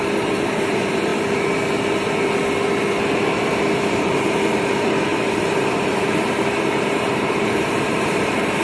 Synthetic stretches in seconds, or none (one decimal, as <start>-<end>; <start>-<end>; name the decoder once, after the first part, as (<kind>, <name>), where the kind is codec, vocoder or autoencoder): 0.0-1.1 (vocoder, BigVGAN v2); 3.9-8.6